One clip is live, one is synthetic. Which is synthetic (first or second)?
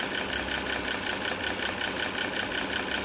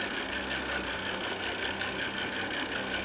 second